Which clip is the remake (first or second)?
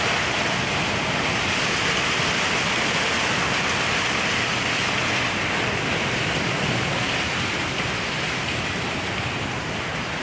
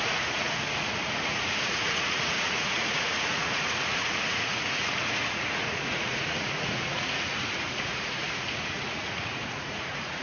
second